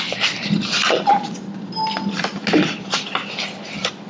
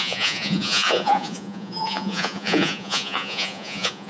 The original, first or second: first